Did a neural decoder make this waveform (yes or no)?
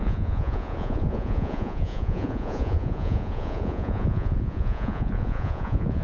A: yes